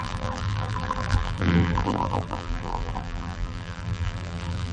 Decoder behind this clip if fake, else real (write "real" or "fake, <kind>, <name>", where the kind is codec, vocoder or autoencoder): fake, vocoder, BigVGAN v2